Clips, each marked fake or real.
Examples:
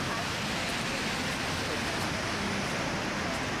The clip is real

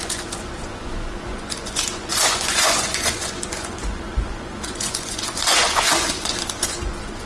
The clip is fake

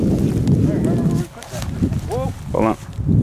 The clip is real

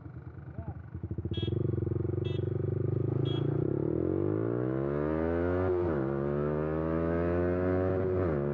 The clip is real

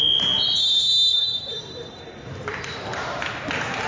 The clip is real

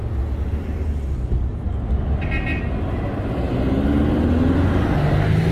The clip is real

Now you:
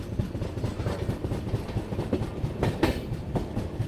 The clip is real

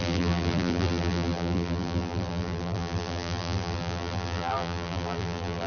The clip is fake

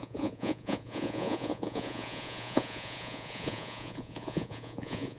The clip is fake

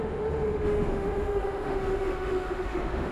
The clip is fake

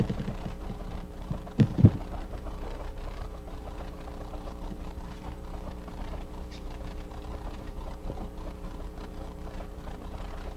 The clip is fake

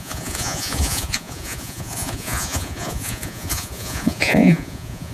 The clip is fake